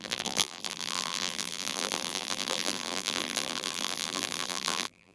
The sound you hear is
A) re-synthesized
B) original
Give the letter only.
A